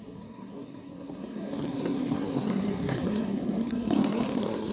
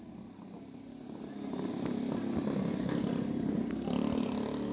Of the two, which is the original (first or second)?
second